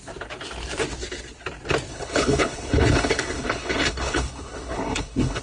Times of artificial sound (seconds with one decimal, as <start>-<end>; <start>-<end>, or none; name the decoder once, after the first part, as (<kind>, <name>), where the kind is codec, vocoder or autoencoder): 1.9-5.4 (codec, HILCodec)